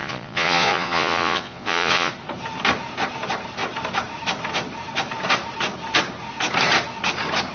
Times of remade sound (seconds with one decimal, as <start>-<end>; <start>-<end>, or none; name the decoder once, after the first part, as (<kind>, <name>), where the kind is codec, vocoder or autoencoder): 0.0-2.1 (vocoder, Vocos)